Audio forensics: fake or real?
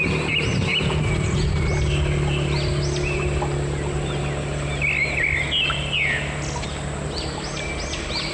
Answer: real